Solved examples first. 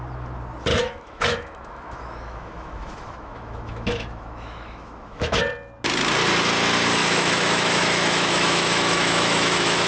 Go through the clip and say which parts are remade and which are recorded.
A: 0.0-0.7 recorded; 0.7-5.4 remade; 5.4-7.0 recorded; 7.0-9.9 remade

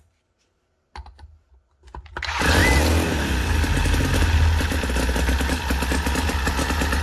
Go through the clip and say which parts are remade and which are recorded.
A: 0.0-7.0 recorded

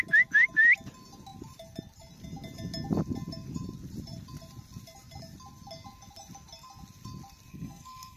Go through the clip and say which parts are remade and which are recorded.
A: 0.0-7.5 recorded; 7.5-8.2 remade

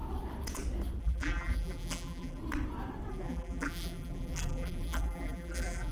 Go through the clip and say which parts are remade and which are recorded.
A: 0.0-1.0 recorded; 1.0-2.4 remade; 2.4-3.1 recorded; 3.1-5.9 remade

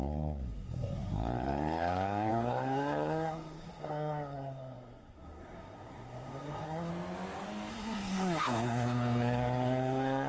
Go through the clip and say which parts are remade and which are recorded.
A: 0.0-6.9 remade; 6.9-7.7 recorded; 7.7-10.3 remade

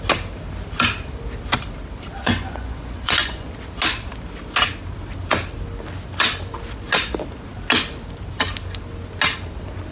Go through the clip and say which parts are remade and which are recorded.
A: 0.0-2.2 recorded; 2.2-3.5 remade; 3.5-9.9 recorded

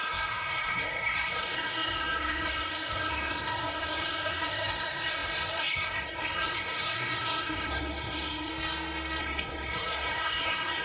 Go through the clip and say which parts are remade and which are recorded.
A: 0.0-8.5 remade; 8.5-9.2 recorded; 9.2-10.8 remade